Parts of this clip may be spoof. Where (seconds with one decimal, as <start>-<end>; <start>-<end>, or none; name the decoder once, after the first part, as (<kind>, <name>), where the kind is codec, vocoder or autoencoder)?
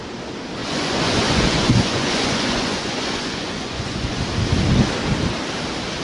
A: 0.6-4.2 (vocoder, Vocos)